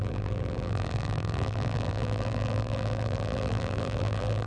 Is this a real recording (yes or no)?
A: no